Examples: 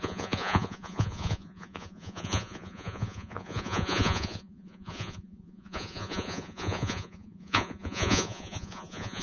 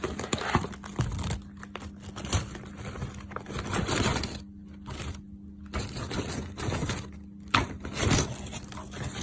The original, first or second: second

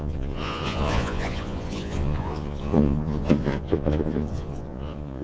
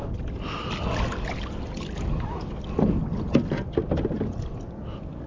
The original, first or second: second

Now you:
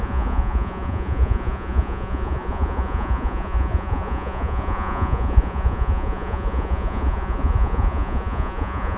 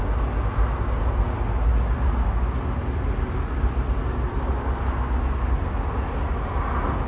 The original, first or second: second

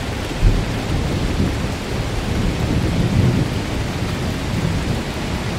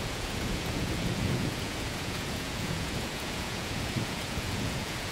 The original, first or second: first